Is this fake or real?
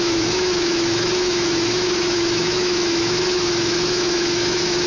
fake